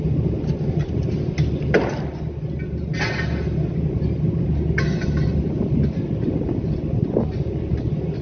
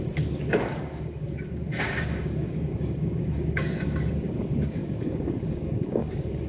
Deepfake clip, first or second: second